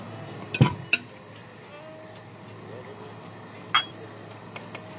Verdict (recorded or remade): recorded